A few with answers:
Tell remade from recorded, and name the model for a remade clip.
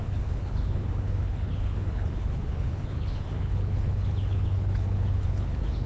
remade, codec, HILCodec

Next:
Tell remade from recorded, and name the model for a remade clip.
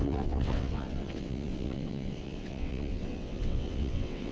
remade, vocoder, WaveNeXt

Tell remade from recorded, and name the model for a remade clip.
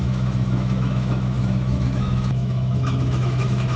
remade, autoencoder, DAC-VAE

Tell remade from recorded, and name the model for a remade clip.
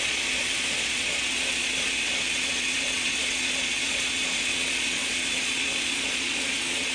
remade, vocoder, Vocos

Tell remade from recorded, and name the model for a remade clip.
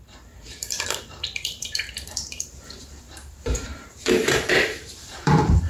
remade, vocoder, BigVGAN v2